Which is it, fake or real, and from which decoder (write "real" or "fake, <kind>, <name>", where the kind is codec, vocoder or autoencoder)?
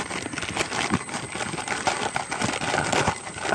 real